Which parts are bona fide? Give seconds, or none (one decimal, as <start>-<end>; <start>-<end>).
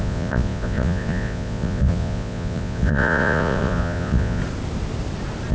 4.4-5.5